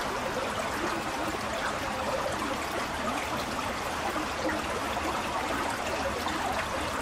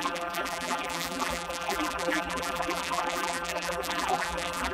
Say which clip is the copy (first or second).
second